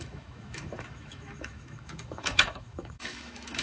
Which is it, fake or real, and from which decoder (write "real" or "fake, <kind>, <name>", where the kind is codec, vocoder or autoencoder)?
fake, autoencoder, DAC-VAE